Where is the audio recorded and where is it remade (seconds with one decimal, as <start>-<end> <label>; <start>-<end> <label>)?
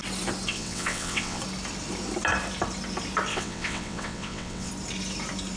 0.0-0.5 recorded; 0.5-1.4 remade; 1.4-3.3 recorded; 3.3-4.7 remade; 4.7-5.6 recorded